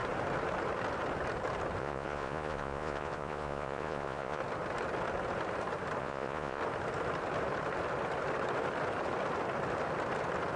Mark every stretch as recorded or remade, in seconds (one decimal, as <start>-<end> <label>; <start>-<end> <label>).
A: 0.0-1.8 recorded; 1.8-4.4 remade; 4.4-6.0 recorded; 6.0-6.6 remade; 6.6-10.6 recorded